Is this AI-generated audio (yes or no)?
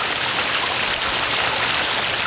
yes